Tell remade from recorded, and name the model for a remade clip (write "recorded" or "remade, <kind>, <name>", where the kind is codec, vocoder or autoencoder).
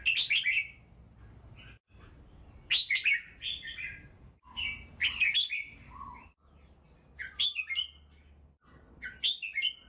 recorded